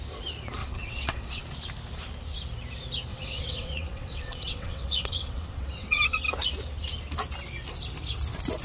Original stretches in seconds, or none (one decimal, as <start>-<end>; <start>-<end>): 0.0-0.6; 1.4-3.1; 6.0-8.6